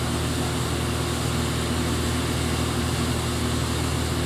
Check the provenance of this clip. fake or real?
real